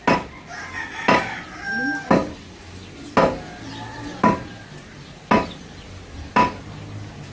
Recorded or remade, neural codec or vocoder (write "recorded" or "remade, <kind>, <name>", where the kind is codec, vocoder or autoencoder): recorded